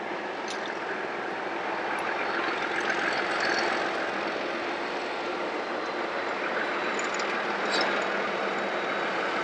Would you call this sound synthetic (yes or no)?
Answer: no